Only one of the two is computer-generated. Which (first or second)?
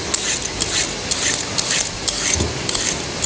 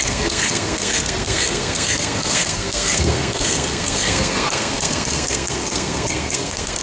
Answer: second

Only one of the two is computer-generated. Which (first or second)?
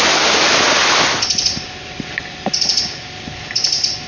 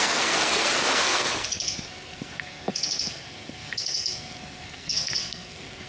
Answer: second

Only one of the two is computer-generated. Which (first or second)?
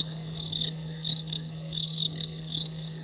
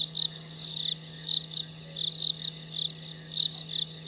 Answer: first